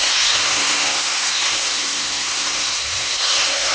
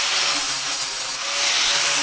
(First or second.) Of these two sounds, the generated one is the first